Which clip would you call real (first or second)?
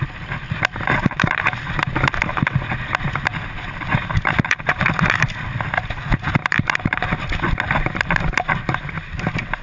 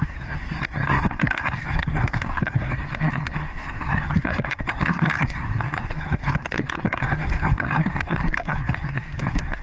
first